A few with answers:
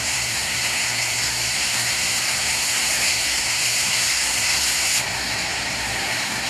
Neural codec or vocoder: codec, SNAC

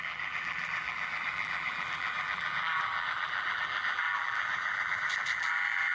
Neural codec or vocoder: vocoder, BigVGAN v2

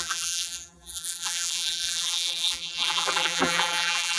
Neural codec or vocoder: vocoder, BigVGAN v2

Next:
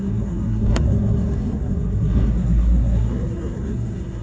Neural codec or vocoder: codec, SNAC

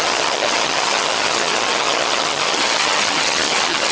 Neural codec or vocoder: vocoder, HiFi-GAN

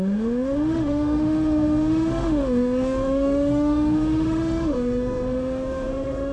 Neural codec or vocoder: autoencoder, DAC-VAE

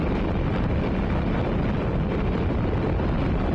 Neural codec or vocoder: vocoder, BigVGAN v2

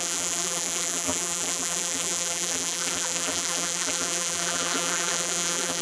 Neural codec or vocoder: vocoder, BigVGAN v2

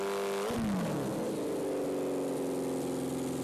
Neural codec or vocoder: none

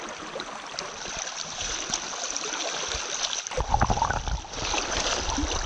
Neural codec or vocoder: none